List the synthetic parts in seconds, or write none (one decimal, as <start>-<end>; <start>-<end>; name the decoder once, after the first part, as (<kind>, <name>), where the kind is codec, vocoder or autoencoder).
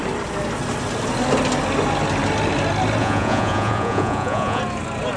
3.0-4.6 (vocoder, Vocos)